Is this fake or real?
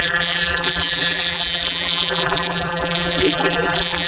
fake